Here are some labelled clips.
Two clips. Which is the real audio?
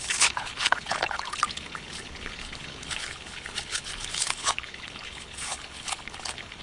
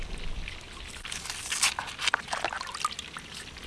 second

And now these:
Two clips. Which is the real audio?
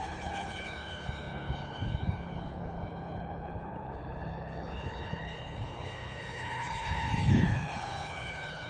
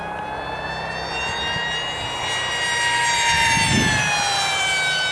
second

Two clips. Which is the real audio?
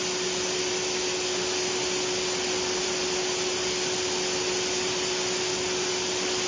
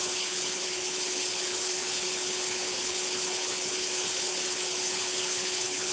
first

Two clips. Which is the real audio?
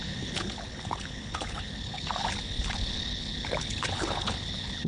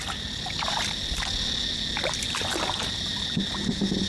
second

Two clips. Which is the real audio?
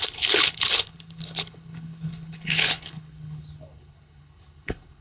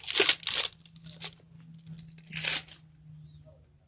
second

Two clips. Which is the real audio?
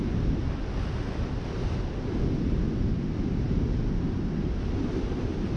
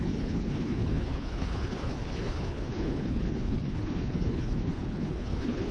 first